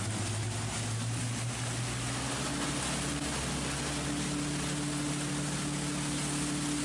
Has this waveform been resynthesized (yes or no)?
no